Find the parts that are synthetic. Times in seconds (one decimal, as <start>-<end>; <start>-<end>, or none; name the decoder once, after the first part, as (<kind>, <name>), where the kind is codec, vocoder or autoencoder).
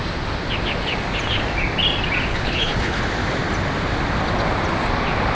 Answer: 2.3-3.0 (codec, HILCodec)